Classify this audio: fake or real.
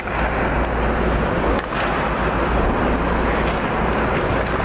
real